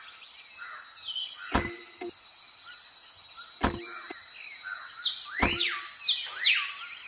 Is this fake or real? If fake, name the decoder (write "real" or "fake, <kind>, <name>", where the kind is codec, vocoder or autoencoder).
real